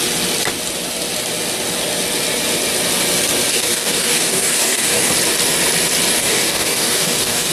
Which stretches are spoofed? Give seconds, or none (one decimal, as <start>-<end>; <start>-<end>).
3.5-5.1; 6.2-7.5